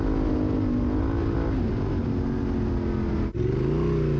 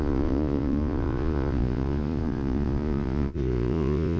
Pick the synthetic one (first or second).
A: second